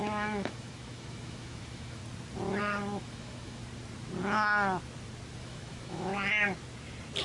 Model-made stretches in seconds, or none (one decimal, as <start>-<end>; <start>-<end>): 0.0-2.0; 2.6-3.6; 5.4-6.1